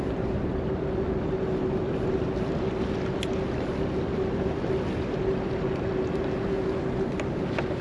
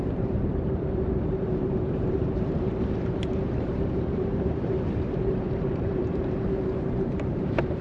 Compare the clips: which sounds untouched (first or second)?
first